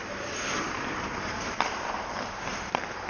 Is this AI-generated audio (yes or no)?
yes